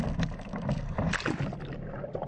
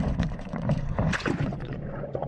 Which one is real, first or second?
first